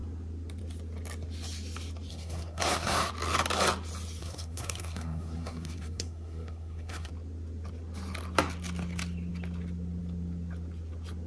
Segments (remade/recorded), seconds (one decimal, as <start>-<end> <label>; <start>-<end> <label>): 0.0-2.1 recorded; 2.1-3.1 remade; 3.1-4.2 recorded; 4.2-7.1 remade; 7.1-11.3 recorded